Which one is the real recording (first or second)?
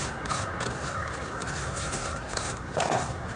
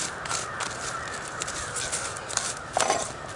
second